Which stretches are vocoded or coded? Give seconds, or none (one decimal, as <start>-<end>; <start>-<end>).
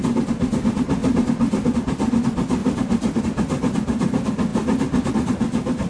1.0-1.7; 2.6-3.2